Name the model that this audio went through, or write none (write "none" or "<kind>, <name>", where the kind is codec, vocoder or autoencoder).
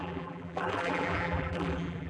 vocoder, BigVGAN v2